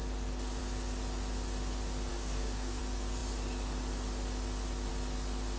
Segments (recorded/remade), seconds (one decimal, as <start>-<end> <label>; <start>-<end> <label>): 0.0-2.1 recorded; 2.1-2.8 remade; 2.8-5.6 recorded